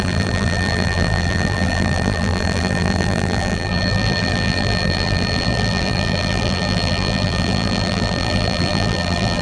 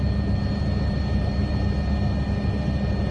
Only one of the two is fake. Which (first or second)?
first